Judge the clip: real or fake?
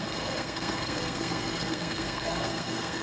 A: fake